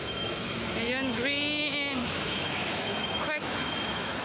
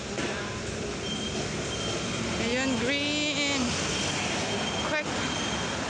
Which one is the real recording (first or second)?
second